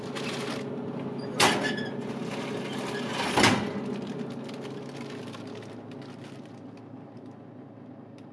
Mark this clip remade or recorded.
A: recorded